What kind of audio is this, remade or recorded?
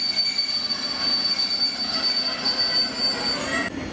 recorded